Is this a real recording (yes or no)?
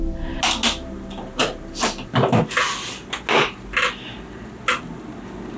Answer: yes